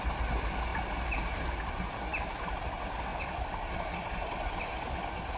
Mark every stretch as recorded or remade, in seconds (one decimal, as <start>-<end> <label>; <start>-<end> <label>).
0.0-0.7 recorded; 0.7-1.6 remade; 1.6-5.4 recorded